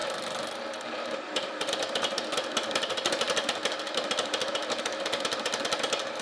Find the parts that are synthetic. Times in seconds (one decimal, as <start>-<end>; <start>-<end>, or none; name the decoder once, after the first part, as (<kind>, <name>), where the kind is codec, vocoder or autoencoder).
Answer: none